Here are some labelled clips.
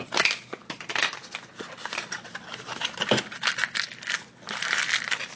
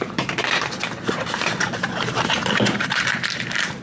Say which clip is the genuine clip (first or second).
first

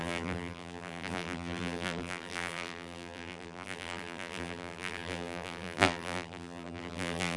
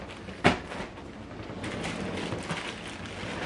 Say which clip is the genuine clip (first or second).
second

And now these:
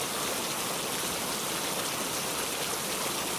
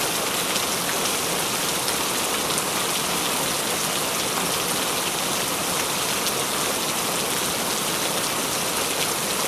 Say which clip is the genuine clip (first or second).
second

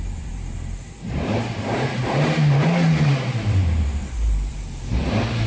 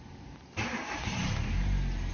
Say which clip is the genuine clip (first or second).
second